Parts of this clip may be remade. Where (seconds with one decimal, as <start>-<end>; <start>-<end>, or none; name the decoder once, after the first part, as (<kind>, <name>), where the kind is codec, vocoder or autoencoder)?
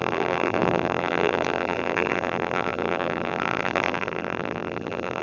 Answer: 0.0-5.2 (vocoder, BigVGAN v2)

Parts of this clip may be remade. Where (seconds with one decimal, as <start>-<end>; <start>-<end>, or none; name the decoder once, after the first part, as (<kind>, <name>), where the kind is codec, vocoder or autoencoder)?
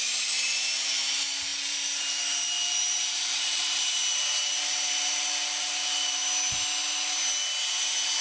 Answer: 0.0-6.2 (vocoder, BigVGAN v2)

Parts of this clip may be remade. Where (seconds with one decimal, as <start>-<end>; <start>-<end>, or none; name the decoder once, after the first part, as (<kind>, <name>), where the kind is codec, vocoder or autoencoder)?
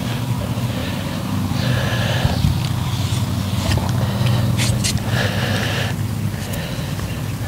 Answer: 0.8-1.5 (vocoder, BigVGAN v2)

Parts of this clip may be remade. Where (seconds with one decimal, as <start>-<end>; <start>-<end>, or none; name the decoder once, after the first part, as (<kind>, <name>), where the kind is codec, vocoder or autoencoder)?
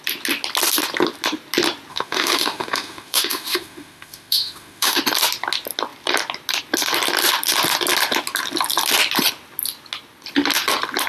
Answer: 1.9-5.0 (autoencoder, DAC-VAE)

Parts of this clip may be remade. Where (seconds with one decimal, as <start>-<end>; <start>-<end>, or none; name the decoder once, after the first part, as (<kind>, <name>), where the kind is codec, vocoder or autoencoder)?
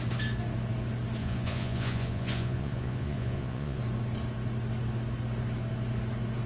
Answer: 1.2-3.8 (vocoder, Vocos)